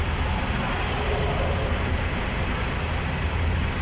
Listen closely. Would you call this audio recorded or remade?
recorded